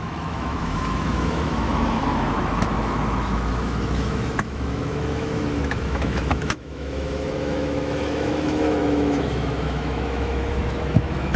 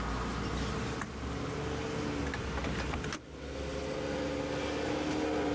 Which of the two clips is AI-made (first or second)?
first